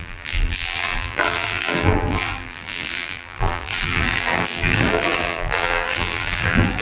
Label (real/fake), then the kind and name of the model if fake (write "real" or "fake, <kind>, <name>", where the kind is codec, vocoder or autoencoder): fake, vocoder, BigVGAN v2